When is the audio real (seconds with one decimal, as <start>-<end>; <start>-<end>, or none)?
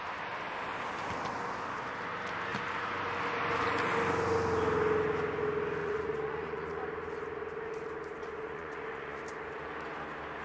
0.0-5.8; 6.8-8.2; 9.2-10.4